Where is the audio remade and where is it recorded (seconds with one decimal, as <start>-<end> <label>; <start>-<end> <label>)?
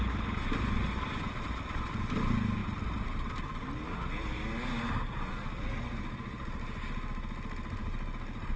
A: 0.0-8.6 recorded